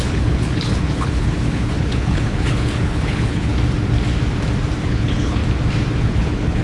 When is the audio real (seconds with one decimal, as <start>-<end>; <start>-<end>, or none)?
3.5-4.8; 5.4-6.0